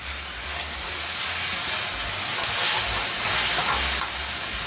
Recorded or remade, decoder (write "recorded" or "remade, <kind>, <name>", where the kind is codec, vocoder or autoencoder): recorded